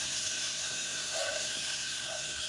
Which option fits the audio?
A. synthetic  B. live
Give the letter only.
A